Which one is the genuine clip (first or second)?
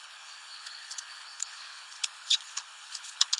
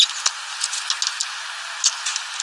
second